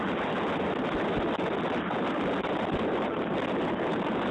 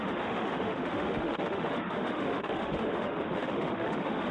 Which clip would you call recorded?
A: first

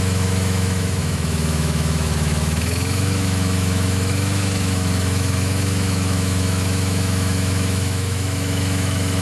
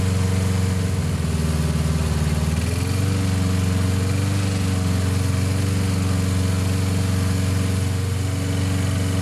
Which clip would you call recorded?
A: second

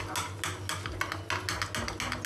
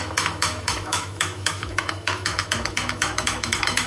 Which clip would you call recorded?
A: first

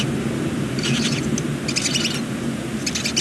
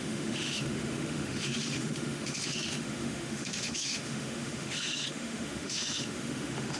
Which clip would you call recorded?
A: first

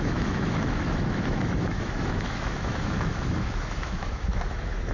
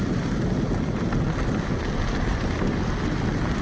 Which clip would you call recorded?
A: second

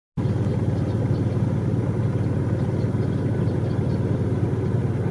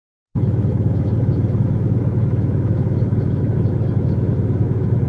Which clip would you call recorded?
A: first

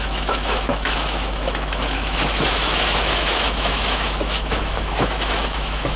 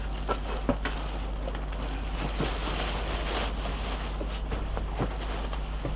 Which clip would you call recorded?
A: second